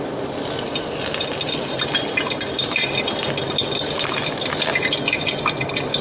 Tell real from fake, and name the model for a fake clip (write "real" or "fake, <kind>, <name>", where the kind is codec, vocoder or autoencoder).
real